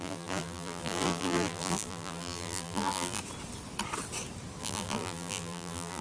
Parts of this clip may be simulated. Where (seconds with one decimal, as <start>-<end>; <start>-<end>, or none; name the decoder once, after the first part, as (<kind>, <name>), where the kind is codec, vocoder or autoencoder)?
0.0-3.2 (vocoder, BigVGAN v2); 4.6-6.0